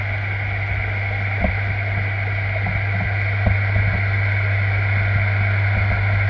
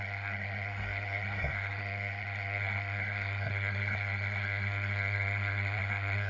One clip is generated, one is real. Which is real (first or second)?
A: first